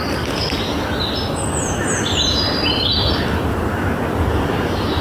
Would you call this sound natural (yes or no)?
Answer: yes